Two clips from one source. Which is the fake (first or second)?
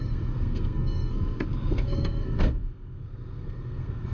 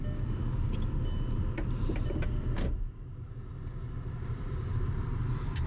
first